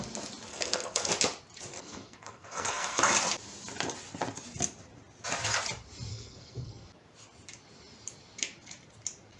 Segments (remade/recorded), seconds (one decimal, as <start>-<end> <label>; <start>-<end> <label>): 0.0-0.5 recorded; 0.5-1.1 remade; 1.1-1.7 recorded; 1.7-3.0 remade; 3.0-6.1 recorded; 6.1-6.9 remade; 6.9-9.4 recorded